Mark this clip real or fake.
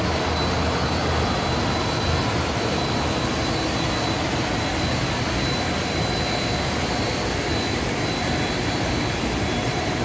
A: real